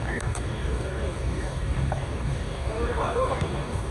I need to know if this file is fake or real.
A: fake